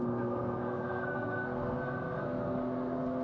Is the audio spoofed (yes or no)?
yes